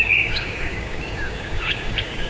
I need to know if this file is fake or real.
fake